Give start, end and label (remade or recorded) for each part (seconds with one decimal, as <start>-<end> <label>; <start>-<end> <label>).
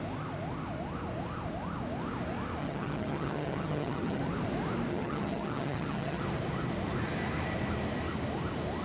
0.0-2.6 recorded; 2.6-4.2 remade; 4.2-4.9 recorded; 4.9-6.2 remade; 6.2-8.8 recorded